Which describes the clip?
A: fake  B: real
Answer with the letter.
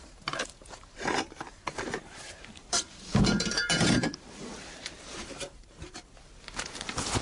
A